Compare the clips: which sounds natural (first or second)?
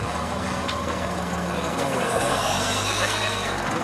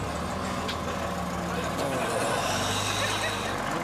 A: second